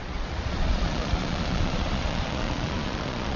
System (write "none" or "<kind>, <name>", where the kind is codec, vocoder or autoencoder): vocoder, Vocos